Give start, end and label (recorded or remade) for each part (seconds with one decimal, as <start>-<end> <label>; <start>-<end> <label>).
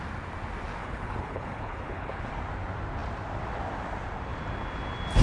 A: 0.0-0.8 recorded; 0.8-2.3 remade; 2.3-5.2 recorded